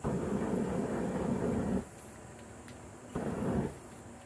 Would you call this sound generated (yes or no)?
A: no